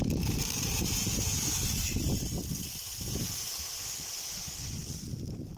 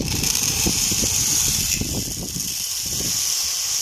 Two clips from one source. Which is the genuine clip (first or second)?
second